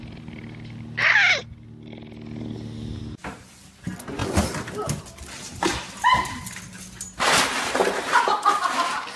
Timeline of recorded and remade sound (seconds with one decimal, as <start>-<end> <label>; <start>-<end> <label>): 0.0-9.2 recorded